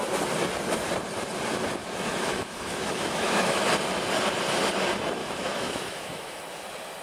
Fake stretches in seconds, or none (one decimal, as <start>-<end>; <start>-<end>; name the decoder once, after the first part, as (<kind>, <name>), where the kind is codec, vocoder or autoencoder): 1.8-3.7 (autoencoder, DAC-VAE); 5.2-6.4